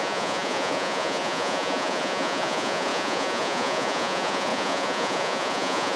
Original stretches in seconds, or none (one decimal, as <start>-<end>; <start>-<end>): none